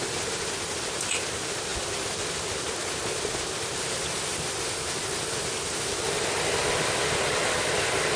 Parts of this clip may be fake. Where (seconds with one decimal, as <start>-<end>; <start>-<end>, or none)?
none